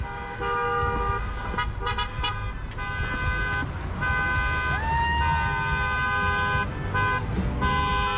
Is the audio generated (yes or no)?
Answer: no